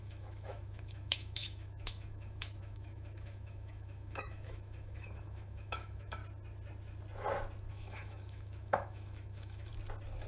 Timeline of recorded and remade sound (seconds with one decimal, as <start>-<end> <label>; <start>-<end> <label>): 0.0-6.2 remade; 6.2-7.7 recorded; 7.7-9.7 remade; 9.7-10.3 recorded